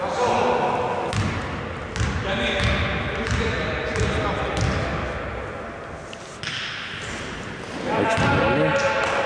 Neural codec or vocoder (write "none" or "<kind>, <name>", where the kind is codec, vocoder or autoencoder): none